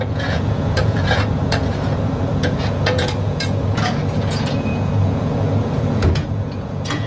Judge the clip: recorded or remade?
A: remade